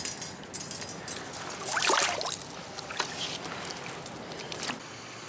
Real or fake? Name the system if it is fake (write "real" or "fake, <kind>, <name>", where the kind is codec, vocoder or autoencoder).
real